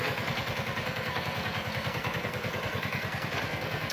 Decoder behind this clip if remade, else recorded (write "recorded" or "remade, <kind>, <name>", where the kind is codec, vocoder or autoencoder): remade, codec, SNAC